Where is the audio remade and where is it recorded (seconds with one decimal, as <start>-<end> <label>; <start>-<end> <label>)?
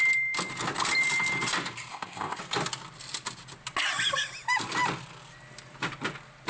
0.0-1.9 recorded; 1.9-2.4 remade; 2.4-6.5 recorded